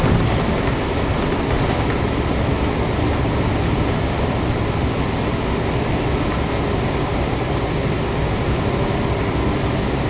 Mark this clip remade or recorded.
recorded